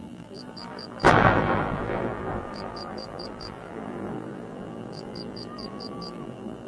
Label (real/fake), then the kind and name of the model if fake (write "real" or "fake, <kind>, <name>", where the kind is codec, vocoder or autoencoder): fake, vocoder, BigVGAN v2